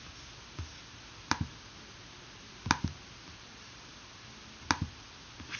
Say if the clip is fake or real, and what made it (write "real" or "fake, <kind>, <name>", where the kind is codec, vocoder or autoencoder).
real